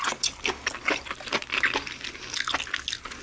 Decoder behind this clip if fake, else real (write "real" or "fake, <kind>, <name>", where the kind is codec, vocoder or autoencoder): real